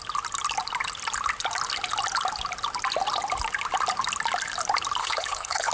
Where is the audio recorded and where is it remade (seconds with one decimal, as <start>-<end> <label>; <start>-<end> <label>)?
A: 0.0-5.0 recorded; 5.0-5.7 remade